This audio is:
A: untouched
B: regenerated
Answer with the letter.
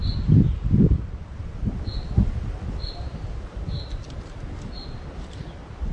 A